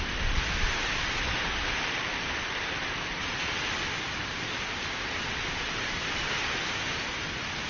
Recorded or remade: recorded